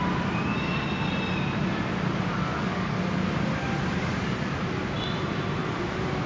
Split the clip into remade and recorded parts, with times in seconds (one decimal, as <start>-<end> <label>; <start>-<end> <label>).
0.0-2.5 recorded; 2.5-3.0 remade; 3.0-6.3 recorded